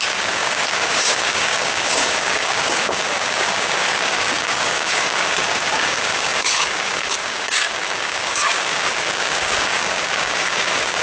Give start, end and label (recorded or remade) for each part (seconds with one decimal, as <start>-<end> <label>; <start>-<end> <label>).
0.0-11.0 remade